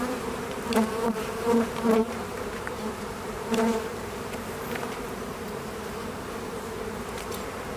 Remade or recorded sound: remade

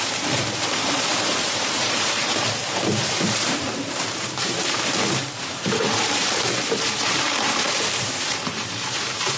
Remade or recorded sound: remade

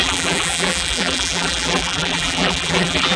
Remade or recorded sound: remade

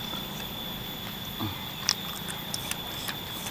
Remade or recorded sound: recorded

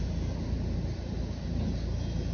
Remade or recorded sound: recorded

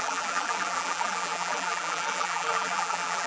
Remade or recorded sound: remade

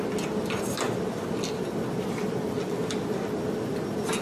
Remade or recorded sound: recorded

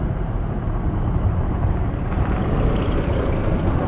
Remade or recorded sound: remade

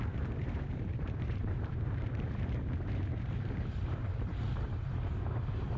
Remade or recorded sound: remade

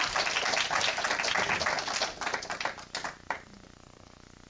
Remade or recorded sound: recorded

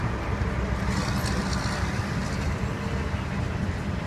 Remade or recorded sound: recorded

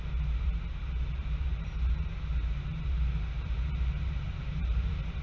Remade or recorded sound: remade